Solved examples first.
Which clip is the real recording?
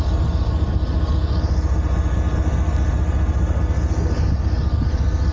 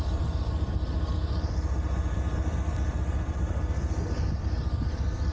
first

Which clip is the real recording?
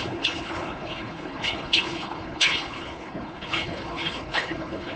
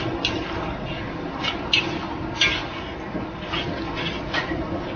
second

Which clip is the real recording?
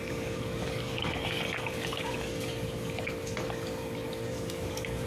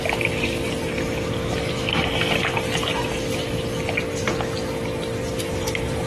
second